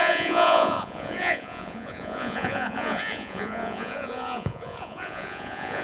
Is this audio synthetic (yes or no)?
yes